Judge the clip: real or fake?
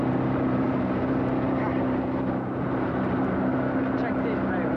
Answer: real